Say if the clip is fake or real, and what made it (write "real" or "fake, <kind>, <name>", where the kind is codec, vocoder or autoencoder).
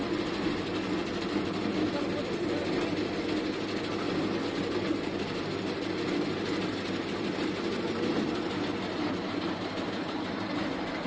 real